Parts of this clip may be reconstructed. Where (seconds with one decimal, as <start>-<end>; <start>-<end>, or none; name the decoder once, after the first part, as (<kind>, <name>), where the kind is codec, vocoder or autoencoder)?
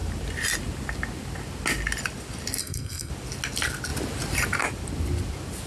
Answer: 2.6-3.1 (codec, SNAC)